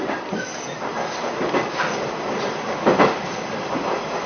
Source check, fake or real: fake